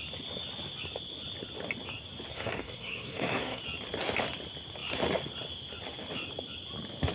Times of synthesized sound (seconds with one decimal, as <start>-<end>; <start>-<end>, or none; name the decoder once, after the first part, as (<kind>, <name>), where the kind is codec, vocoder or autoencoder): 2.3-3.6 (codec, SNAC)